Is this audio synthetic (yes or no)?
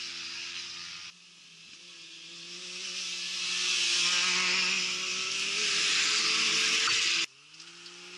no